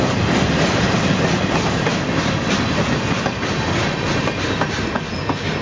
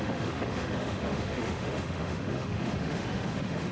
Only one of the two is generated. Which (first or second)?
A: second